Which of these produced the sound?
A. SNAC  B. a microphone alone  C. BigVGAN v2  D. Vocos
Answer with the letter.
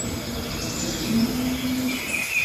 B